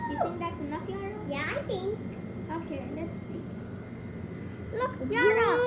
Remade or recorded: recorded